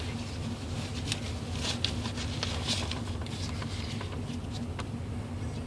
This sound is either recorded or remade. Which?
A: recorded